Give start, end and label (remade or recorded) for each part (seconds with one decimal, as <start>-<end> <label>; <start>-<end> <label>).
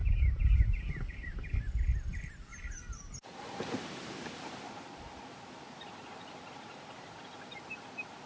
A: 0.0-1.1 remade; 1.1-8.3 recorded